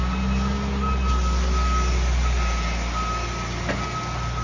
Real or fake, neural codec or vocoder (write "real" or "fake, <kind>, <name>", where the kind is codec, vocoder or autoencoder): real